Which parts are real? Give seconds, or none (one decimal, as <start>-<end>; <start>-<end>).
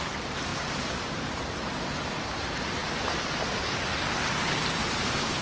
2.8-4.3